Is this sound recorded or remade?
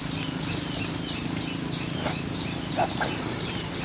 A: remade